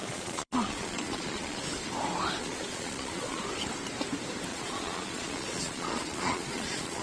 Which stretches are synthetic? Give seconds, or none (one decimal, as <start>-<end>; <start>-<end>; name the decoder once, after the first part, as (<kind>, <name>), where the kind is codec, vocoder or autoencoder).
0.0-1.6 (vocoder, Vocos); 2.4-3.4; 4.5-7.0